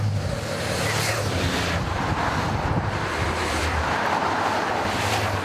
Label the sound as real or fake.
fake